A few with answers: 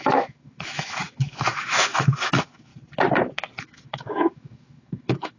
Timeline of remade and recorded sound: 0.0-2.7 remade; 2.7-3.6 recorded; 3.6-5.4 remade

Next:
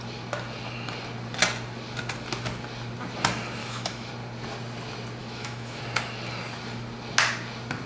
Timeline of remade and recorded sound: 0.0-3.6 recorded; 3.6-4.1 remade; 4.1-5.2 recorded; 5.2-5.8 remade; 5.8-7.9 recorded

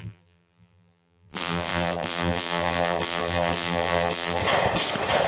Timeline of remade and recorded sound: 0.0-4.4 remade; 4.4-5.3 recorded

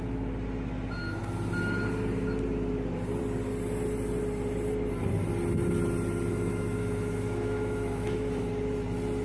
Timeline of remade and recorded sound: 0.0-6.3 recorded; 6.3-8.5 remade; 8.5-9.2 recorded